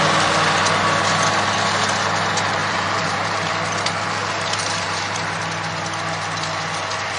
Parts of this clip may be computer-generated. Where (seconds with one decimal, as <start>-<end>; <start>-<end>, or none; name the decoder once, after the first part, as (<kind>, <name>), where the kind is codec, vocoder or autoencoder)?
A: 2.6-3.5 (vocoder, BigVGAN v2); 4.2-5.4